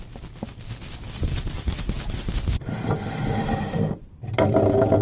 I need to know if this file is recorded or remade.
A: recorded